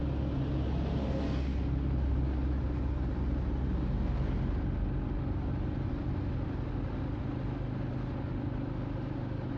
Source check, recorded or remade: recorded